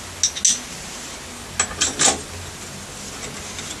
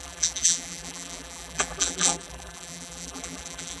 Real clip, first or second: first